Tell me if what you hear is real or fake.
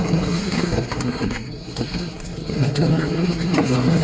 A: fake